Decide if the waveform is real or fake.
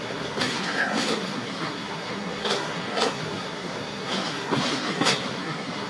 fake